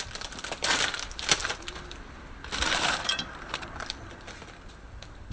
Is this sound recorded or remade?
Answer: remade